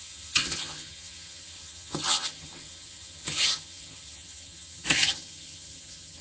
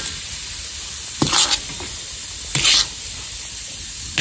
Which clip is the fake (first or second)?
first